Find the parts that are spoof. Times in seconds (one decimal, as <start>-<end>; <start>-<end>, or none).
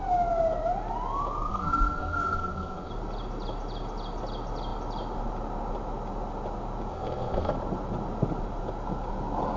1.5-2.9; 6.9-7.5